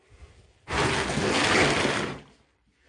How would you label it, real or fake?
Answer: fake